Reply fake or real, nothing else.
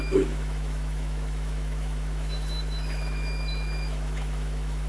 fake